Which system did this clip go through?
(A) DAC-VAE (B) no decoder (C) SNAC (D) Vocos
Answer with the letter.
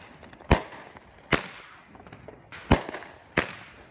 B